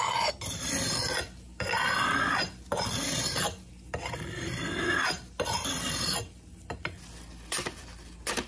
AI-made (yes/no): no